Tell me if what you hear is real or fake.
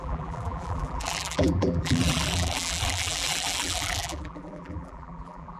fake